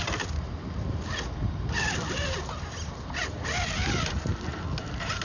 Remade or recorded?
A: recorded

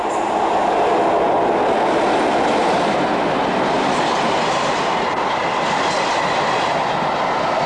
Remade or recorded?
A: recorded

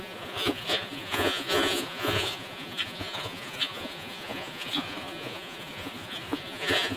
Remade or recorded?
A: remade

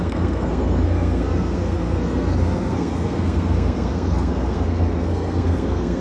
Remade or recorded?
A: remade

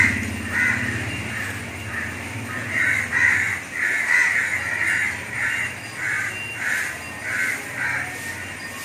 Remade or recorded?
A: recorded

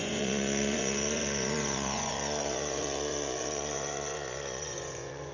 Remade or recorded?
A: remade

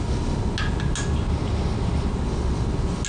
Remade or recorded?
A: recorded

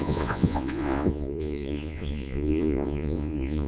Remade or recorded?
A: remade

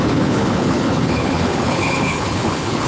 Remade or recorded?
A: remade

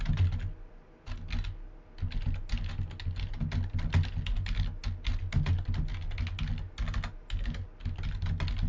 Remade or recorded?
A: recorded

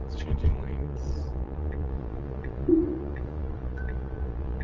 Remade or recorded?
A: remade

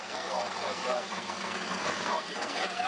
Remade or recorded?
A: remade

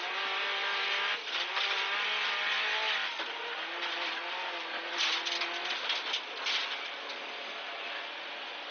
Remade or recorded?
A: recorded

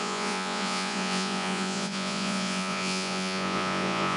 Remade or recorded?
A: remade